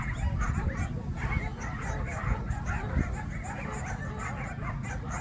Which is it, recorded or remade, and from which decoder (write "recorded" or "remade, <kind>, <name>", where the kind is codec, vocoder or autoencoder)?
recorded